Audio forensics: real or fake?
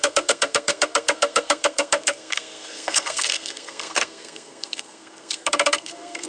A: fake